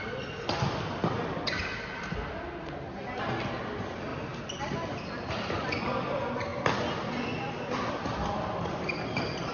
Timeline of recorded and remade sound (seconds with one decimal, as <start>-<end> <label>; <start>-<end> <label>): 0.0-9.5 recorded